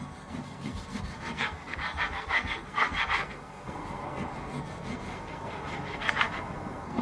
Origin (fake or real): fake